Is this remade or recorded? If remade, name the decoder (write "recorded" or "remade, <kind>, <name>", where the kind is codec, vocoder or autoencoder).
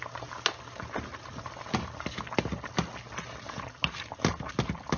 recorded